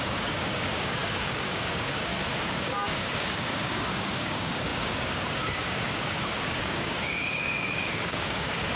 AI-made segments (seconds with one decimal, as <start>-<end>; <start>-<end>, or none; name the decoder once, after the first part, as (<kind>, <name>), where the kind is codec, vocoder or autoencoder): 0.0-2.1 (codec, DAC); 2.6-8.8